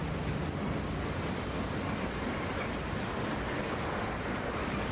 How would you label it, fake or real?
real